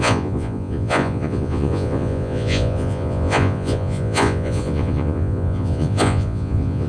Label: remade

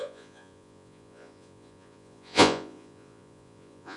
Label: remade